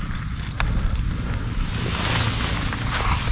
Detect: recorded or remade recorded